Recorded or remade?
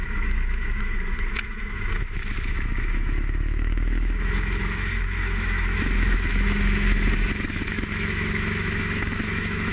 remade